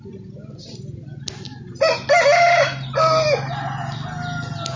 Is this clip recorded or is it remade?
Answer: recorded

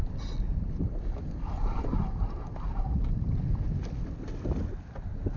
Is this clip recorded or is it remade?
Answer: recorded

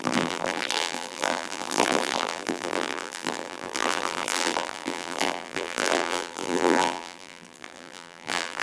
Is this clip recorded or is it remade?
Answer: remade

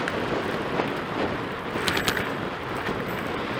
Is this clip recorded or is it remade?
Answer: recorded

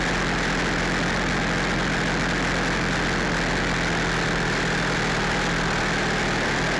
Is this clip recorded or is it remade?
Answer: recorded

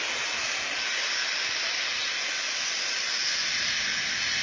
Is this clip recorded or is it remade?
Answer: recorded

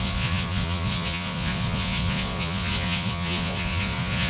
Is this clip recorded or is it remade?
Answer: remade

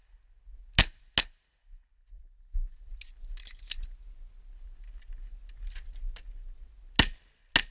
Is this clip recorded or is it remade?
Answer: recorded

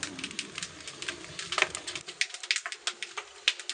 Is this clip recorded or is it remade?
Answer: recorded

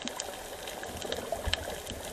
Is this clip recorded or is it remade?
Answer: recorded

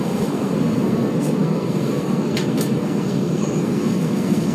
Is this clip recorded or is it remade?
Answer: remade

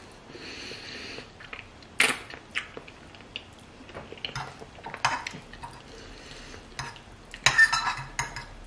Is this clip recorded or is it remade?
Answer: recorded